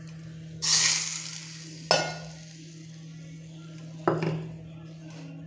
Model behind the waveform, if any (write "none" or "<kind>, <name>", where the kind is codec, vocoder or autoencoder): none